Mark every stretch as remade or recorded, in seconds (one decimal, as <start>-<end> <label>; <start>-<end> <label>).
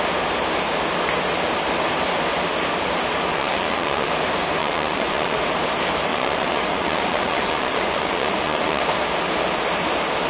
0.0-3.3 recorded; 3.3-4.1 remade; 4.1-4.6 recorded; 4.6-5.4 remade; 5.4-6.1 recorded; 6.1-8.8 remade; 8.8-10.3 recorded